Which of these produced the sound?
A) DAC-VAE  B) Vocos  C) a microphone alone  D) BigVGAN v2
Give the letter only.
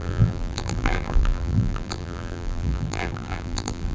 D